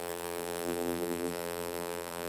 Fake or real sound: fake